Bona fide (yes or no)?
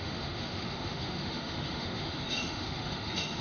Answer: no